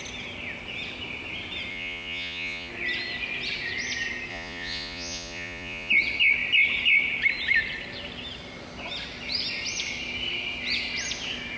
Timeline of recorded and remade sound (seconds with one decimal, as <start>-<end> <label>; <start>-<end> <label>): 0.0-1.7 recorded; 1.7-2.7 remade; 2.7-4.3 recorded; 4.3-5.9 remade; 5.9-11.6 recorded